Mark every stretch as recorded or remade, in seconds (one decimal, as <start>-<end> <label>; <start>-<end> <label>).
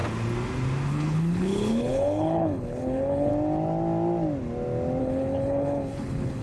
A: 0.0-0.9 recorded; 0.9-3.3 remade; 3.3-5.0 recorded; 5.0-6.4 remade